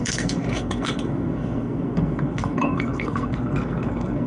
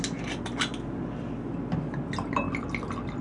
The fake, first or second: first